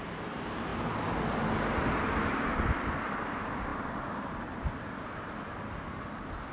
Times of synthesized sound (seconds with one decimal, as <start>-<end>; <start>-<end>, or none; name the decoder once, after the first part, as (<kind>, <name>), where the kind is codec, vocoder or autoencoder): 0.0-0.7 (vocoder, BigVGAN v2); 1.8-6.5